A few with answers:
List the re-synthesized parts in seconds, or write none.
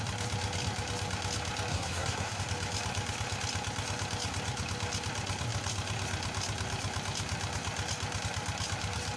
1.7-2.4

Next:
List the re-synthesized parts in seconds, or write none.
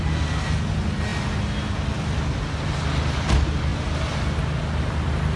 none